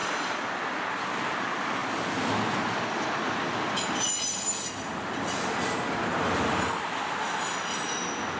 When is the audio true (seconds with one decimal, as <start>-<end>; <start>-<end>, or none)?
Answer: 0.0-8.4